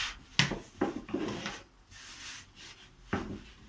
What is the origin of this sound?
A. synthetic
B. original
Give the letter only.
B